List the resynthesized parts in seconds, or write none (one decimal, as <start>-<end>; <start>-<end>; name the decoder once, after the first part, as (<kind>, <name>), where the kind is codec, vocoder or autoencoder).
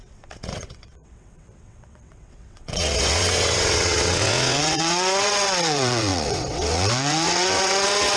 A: 0.0-8.2 (vocoder, WaveNeXt)